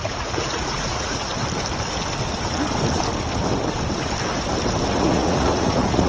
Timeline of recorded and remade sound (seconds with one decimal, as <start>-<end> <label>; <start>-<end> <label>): 0.0-1.3 remade; 1.3-4.9 recorded; 4.9-6.1 remade